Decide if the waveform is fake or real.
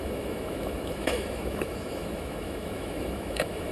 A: fake